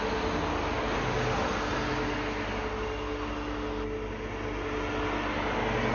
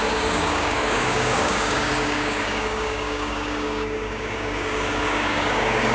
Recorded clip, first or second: first